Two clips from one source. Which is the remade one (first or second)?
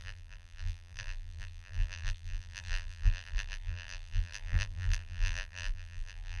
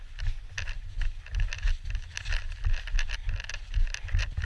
first